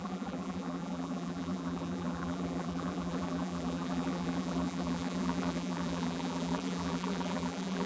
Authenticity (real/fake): fake